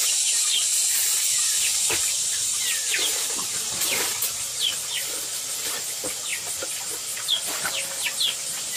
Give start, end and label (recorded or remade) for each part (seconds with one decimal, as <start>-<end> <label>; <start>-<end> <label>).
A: 0.0-8.8 recorded